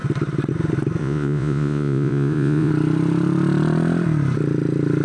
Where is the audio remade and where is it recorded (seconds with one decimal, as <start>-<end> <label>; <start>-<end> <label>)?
0.0-1.0 recorded; 1.0-2.7 remade; 2.7-5.0 recorded